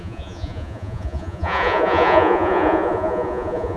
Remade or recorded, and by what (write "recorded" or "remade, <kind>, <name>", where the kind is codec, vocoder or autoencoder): remade, vocoder, Vocos